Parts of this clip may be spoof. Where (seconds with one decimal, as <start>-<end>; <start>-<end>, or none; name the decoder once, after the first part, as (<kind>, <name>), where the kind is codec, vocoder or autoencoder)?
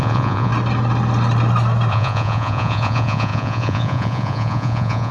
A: 0.0-0.5 (vocoder, Vocos); 1.9-5.1